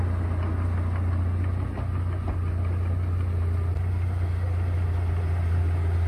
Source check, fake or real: real